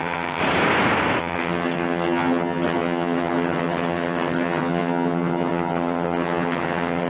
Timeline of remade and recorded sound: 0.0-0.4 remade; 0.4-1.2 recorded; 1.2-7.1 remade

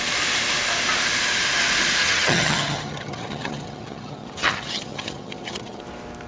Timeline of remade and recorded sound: 0.0-2.0 recorded; 2.0-5.8 remade; 5.8-6.3 recorded

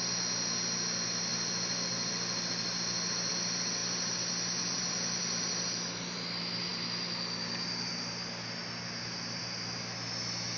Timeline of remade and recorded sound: 0.0-10.6 recorded

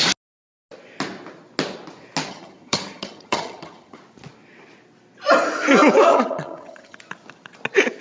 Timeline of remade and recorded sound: 0.0-2.3 recorded; 2.3-4.0 remade; 4.0-6.1 recorded; 6.1-7.0 remade; 7.0-8.0 recorded